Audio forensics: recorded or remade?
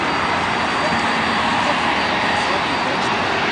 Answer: recorded